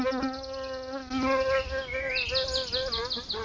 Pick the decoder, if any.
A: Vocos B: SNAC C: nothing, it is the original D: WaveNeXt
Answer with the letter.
C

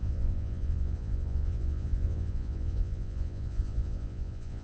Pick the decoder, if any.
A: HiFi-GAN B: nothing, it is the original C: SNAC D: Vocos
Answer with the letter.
D